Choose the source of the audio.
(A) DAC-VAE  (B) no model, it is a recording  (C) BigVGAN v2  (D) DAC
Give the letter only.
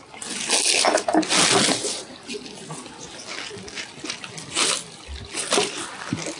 B